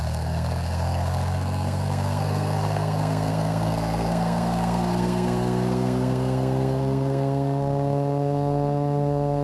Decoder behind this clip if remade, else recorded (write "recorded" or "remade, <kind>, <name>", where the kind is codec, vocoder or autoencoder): remade, codec, SNAC